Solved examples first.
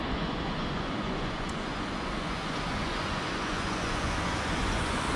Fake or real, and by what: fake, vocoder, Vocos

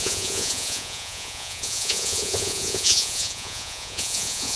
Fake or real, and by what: fake, vocoder, Vocos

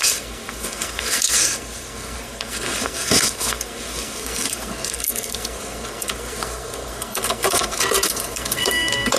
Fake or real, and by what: fake, codec, SNAC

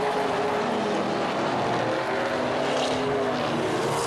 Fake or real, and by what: real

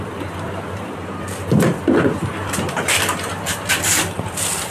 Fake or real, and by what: fake, vocoder, BigVGAN v2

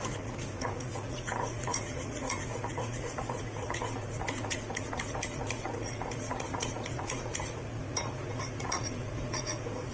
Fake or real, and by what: fake, vocoder, Vocos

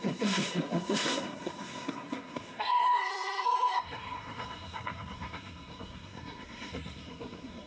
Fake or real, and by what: fake, codec, SNAC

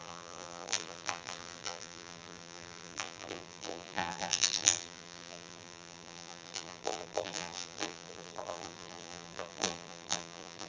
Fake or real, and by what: fake, vocoder, BigVGAN v2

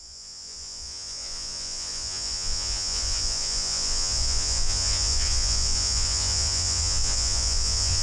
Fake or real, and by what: fake, vocoder, Vocos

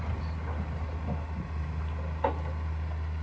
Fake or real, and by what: real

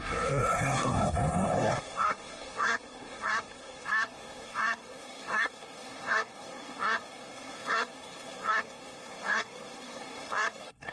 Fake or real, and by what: fake, codec, SNAC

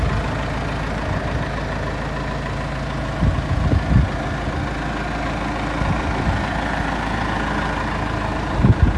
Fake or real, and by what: real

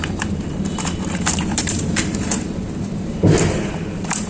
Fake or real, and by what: fake, vocoder, BigVGAN v2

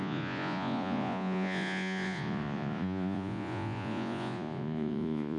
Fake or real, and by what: fake, vocoder, Vocos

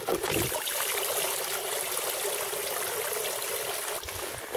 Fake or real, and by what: real